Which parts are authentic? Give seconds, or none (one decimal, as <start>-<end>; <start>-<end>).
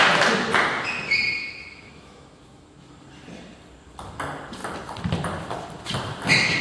0.0-1.4; 2.9-6.6